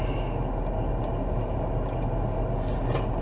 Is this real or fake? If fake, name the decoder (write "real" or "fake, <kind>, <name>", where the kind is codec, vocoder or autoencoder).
real